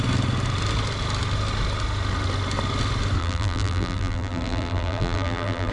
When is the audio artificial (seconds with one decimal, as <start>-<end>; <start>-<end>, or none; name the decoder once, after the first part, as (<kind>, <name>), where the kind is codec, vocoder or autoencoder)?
3.2-5.7 (vocoder, BigVGAN v2)